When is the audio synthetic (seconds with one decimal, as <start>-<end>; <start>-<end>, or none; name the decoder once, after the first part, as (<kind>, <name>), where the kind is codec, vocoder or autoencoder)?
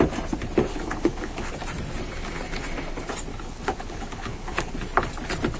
0.7-1.5 (codec, HILCodec); 3.3-4.7